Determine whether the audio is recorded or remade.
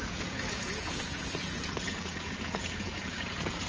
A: remade